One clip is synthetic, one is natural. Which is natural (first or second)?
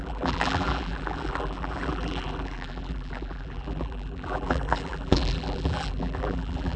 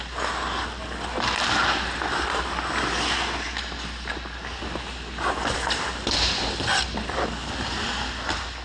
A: second